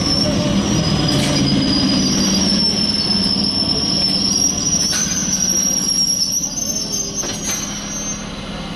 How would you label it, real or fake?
real